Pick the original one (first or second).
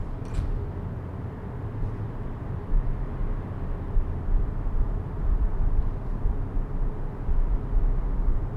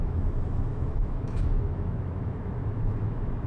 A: first